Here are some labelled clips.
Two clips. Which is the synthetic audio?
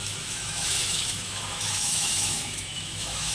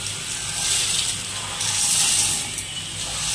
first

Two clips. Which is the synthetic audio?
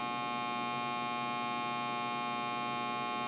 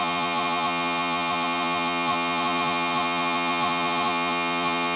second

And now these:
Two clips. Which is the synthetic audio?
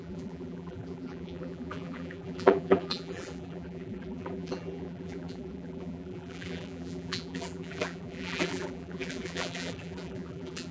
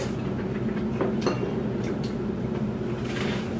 first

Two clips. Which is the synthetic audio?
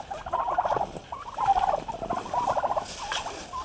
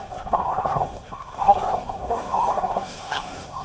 second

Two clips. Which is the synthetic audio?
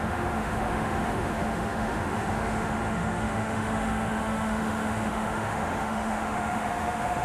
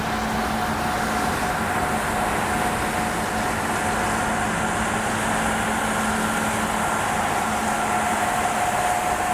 first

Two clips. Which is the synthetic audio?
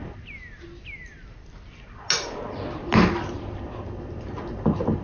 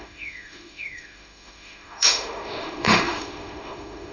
second